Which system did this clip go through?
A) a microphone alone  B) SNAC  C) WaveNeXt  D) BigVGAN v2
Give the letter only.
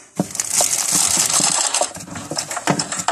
A